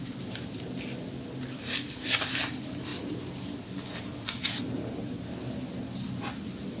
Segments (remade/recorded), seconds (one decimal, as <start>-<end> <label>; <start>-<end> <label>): 0.0-6.8 recorded

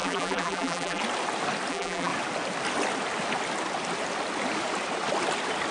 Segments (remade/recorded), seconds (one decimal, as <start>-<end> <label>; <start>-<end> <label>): 0.0-1.0 remade; 1.0-1.7 recorded; 1.7-2.1 remade; 2.1-5.7 recorded

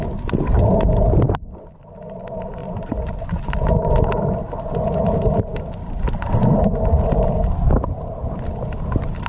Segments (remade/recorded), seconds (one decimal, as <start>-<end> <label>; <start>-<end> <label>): 0.0-2.6 recorded; 2.6-4.1 remade; 4.1-9.3 recorded

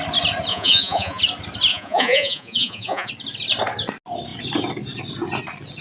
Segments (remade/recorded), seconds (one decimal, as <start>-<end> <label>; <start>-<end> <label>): 0.0-0.5 recorded; 0.5-1.2 remade; 1.2-1.7 recorded; 1.7-3.1 remade; 3.1-5.8 recorded

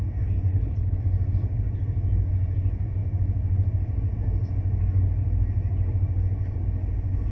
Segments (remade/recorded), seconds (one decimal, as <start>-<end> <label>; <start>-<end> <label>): 0.0-0.5 recorded; 0.5-1.0 remade; 1.0-7.3 recorded

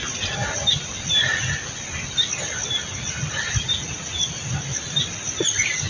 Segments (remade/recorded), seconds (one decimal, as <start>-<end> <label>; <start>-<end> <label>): 0.0-5.9 recorded

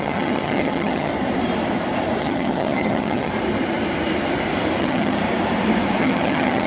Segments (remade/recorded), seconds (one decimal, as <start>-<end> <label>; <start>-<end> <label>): 0.0-1.1 remade; 1.1-2.2 recorded; 2.2-3.3 remade; 3.3-4.8 recorded; 4.8-5.2 remade; 5.2-6.0 recorded; 6.0-6.7 remade